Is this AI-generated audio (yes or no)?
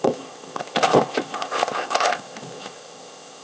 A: yes